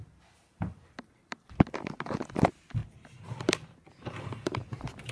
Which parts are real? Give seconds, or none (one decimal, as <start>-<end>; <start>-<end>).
0.0-5.1